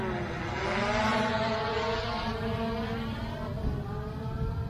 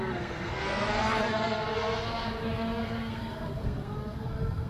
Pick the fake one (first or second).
second